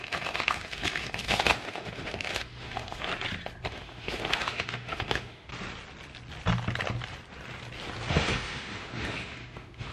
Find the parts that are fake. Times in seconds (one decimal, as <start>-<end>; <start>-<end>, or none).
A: 0.0-3.1; 3.7-5.5; 8.1-9.9